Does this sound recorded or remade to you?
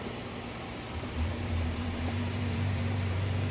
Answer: remade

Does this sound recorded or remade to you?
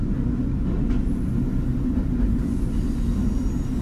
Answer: recorded